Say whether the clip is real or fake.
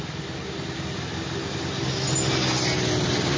real